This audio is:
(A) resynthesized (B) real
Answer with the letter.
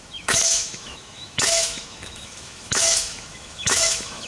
A